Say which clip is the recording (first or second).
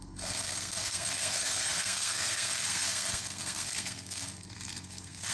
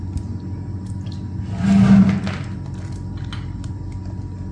second